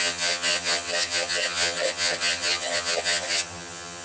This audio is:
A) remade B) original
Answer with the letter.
A